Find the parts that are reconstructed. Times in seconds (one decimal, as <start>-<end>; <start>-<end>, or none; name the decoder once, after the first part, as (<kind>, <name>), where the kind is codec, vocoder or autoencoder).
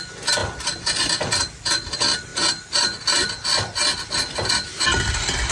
none